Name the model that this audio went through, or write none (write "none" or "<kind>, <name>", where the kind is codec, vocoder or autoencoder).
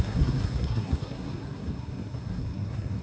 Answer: codec, SNAC